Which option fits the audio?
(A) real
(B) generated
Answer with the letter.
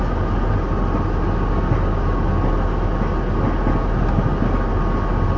A